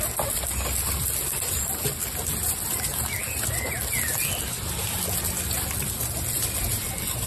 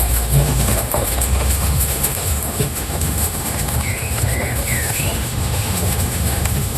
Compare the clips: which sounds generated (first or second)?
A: second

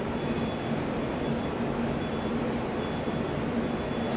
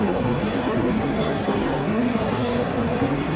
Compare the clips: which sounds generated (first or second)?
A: second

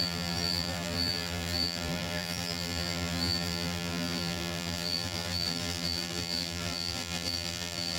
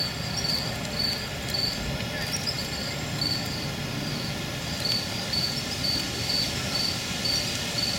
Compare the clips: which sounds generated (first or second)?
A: first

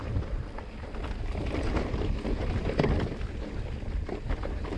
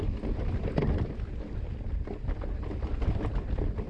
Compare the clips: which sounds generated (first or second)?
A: first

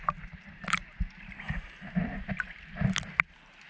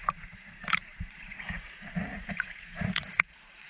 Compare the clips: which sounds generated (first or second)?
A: second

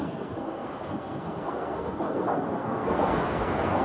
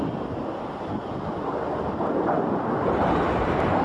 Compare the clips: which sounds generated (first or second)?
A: first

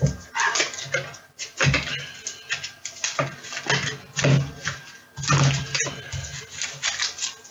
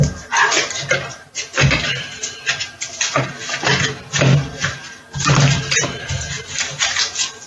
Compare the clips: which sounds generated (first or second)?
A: second